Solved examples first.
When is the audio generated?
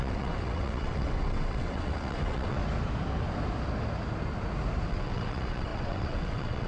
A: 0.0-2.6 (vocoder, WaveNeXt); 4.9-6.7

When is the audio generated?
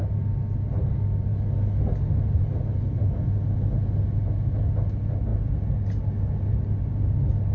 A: none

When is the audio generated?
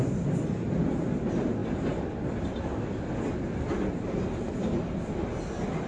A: none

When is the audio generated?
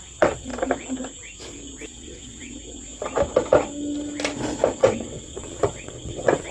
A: 0.0-0.5 (vocoder, WaveNeXt); 1.9-2.5; 4.8-6.5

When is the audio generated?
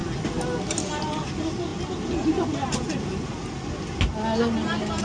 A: none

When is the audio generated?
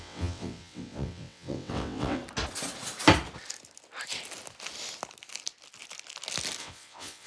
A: 0.0-2.2 (vocoder, WaveNeXt); 6.6-7.3